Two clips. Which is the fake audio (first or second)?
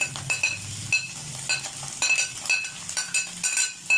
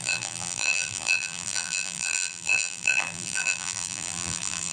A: second